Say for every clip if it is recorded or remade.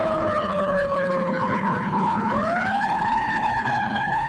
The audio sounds remade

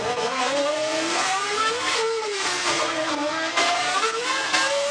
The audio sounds remade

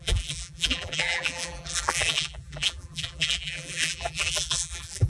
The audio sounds remade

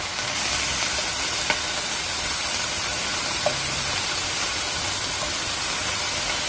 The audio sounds recorded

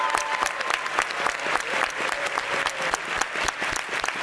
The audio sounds recorded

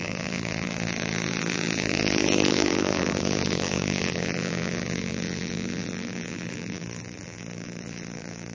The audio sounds remade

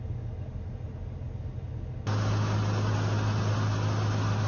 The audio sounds recorded